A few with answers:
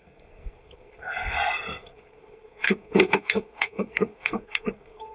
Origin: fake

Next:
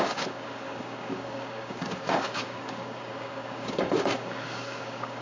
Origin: fake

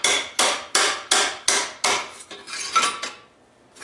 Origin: real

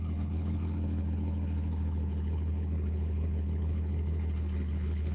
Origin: fake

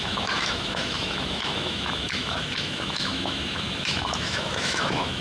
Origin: fake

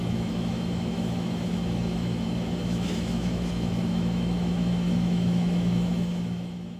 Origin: fake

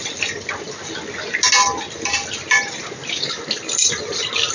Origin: real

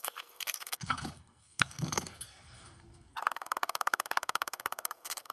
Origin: fake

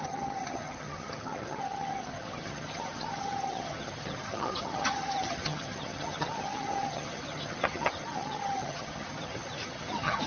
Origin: fake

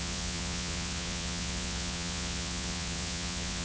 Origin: fake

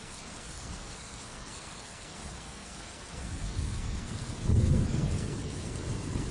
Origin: fake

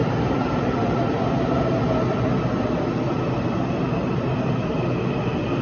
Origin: real